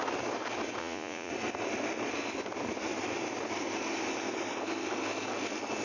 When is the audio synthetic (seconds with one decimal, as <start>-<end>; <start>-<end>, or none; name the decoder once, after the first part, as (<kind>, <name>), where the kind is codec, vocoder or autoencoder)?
0.8-1.3 (vocoder, Vocos)